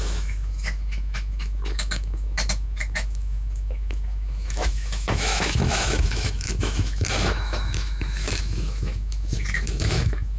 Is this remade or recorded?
remade